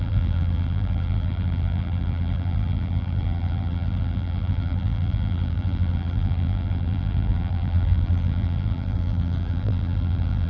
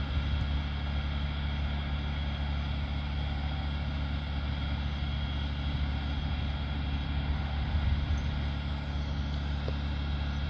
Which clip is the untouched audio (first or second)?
second